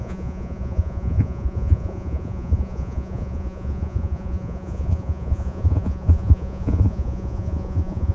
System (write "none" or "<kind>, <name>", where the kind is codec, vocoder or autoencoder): vocoder, Vocos